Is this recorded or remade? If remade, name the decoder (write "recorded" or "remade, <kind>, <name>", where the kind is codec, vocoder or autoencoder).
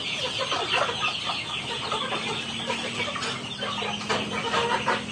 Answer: recorded